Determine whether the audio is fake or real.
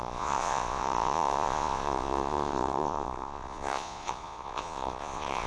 fake